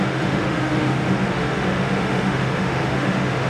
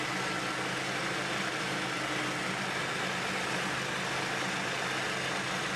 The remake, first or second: first